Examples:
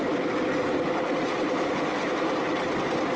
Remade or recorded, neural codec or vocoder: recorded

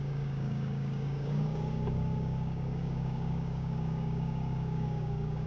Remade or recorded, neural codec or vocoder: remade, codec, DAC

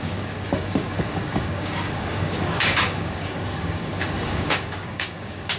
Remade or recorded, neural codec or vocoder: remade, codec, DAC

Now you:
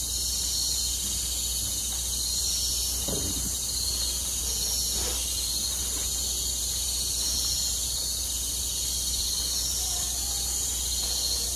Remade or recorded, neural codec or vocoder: recorded